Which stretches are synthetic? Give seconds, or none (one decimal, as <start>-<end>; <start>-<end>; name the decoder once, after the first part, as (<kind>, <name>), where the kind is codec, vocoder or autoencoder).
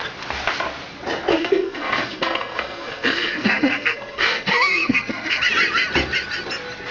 1.3-5.4 (codec, SNAC)